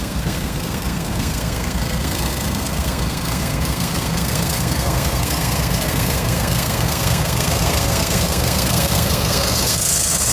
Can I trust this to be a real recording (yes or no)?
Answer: no